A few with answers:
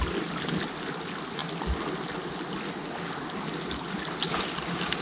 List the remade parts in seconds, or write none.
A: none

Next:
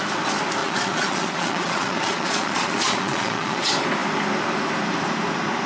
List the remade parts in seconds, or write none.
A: 0.6-3.6 (vocoder, Vocos)